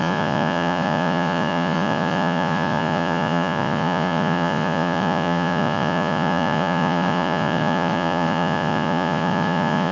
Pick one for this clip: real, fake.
fake